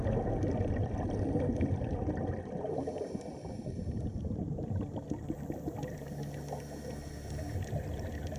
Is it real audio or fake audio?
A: real